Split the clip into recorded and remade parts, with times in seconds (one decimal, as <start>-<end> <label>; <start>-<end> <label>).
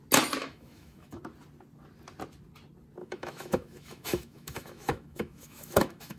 0.0-0.4 recorded; 0.4-1.2 remade; 1.2-3.0 recorded; 3.0-6.2 remade